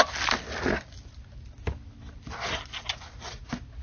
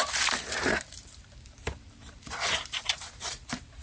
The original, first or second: first